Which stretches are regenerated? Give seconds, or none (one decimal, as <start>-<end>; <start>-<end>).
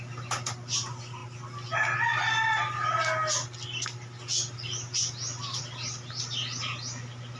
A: none